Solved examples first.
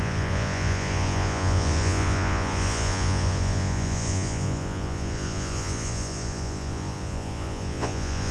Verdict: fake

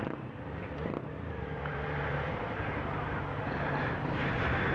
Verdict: fake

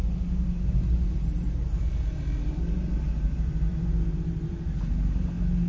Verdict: fake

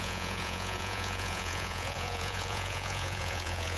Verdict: fake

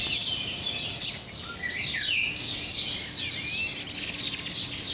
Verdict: real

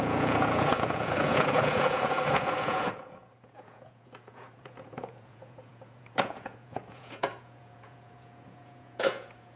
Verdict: fake